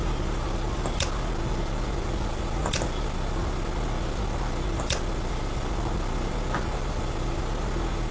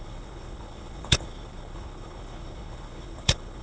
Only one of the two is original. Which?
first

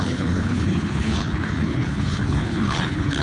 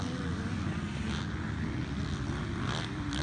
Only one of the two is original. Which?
second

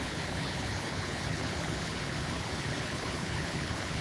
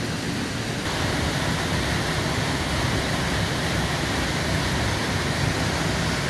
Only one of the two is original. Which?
second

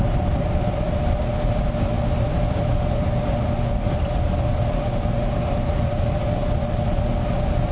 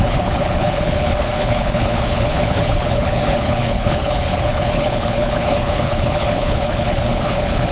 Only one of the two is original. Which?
first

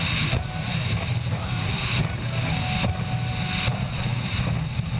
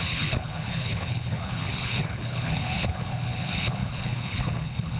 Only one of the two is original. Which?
first